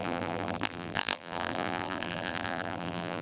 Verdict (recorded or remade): remade